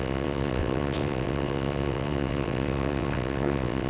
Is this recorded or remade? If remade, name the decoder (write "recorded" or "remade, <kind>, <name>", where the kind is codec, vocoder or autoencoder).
remade, vocoder, WaveNeXt